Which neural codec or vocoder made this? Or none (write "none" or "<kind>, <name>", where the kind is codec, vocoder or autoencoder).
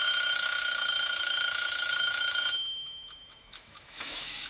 autoencoder, DAC-VAE